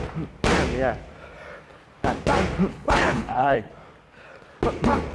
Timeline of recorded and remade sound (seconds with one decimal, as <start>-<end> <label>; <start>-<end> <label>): 0.0-2.7 recorded; 2.7-3.7 remade; 3.7-5.1 recorded